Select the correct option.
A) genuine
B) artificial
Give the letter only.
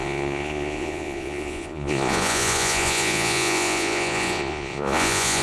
B